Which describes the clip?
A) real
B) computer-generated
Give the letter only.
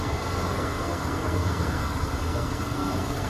B